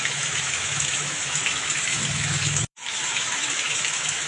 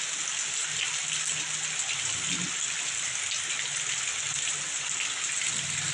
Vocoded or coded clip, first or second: first